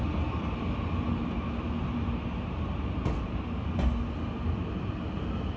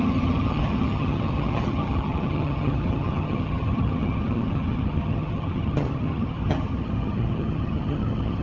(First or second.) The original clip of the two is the first